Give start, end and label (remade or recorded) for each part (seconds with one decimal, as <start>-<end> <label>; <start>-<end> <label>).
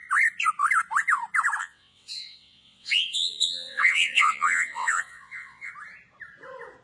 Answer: 0.0-1.6 recorded; 1.6-5.7 remade; 5.7-6.8 recorded